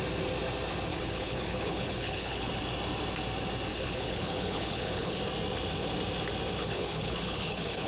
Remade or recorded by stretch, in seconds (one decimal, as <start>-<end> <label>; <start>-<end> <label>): 0.0-0.9 recorded; 0.9-2.5 remade; 2.5-3.7 recorded; 3.7-5.2 remade; 5.2-6.6 recorded; 6.6-7.9 remade